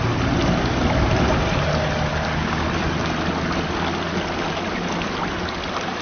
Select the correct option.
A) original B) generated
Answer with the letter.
A